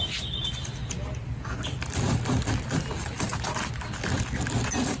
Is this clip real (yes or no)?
yes